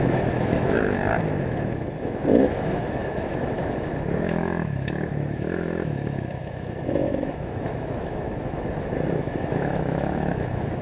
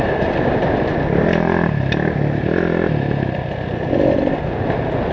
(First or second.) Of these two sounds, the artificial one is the first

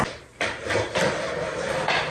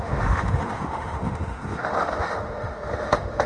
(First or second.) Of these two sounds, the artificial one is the second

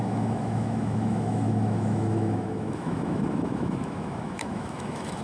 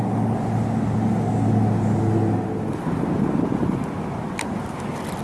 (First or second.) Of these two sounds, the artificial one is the first